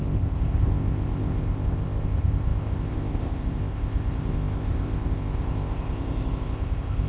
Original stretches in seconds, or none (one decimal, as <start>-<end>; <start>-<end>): none

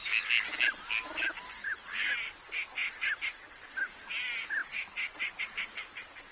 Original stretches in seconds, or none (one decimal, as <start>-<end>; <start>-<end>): 0.0-4.6; 5.4-6.3

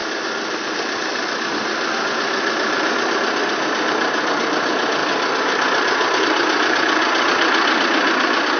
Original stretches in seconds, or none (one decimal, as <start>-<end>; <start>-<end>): 0.0-0.7; 5.0-6.2

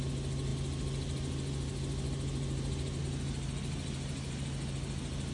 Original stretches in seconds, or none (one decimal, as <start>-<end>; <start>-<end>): 0.0-5.3

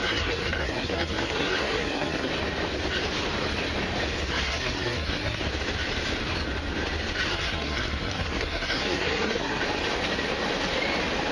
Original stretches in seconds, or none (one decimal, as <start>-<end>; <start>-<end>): 2.3-4.3; 5.4-7.3; 9.6-11.3

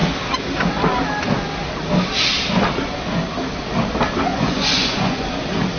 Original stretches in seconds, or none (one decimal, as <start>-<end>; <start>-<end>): 0.0-4.3; 5.3-5.8

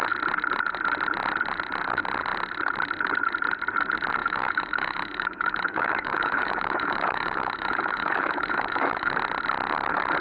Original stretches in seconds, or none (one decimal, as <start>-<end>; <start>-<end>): 0.0-4.2; 9.1-10.2